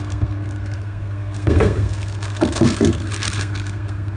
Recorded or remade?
remade